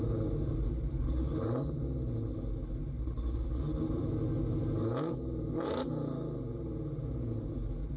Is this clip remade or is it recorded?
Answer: recorded